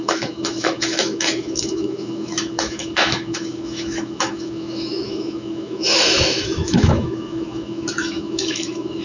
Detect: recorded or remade remade